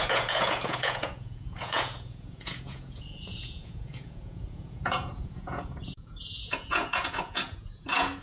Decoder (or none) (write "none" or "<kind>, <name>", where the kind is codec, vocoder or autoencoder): vocoder, Vocos